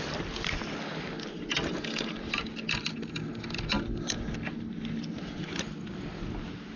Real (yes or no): yes